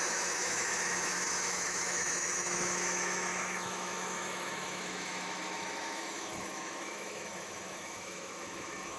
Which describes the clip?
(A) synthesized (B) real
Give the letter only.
A